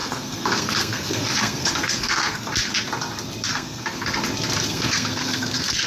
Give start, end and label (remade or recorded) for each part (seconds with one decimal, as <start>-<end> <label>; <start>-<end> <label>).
0.0-2.5 remade; 2.5-3.5 recorded; 3.5-4.2 remade; 4.2-4.7 recorded; 4.7-5.9 remade